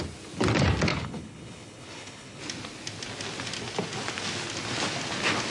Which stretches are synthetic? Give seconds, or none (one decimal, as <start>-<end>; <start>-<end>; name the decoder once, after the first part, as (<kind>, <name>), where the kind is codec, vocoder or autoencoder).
0.9-2.4 (codec, HILCodec)